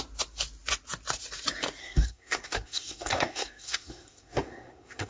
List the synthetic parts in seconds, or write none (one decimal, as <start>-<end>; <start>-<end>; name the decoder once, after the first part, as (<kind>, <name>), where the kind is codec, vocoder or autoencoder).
1.8-5.1 (codec, SNAC)